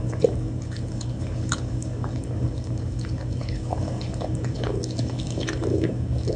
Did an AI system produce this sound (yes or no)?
yes